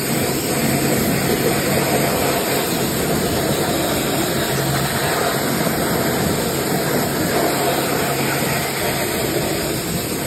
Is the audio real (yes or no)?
yes